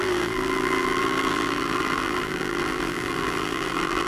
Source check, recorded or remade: remade